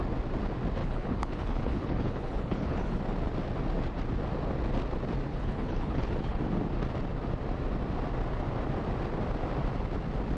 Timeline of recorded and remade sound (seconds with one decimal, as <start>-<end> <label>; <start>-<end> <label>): 0.0-0.8 recorded; 0.8-3.0 remade; 3.0-5.3 recorded; 5.3-6.4 remade; 6.4-10.4 recorded